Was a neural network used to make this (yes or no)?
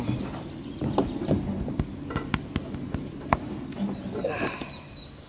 no